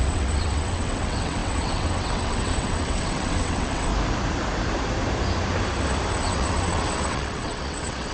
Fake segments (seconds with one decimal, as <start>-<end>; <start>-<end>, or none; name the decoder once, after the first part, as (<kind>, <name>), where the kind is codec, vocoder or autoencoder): 0.0-3.9 (vocoder, WaveNeXt); 6.1-8.1